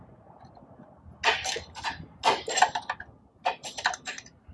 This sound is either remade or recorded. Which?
recorded